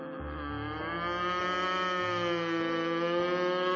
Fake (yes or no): no